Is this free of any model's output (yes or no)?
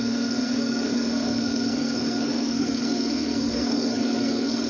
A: no